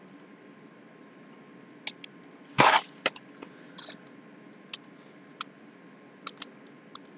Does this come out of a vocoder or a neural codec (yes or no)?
no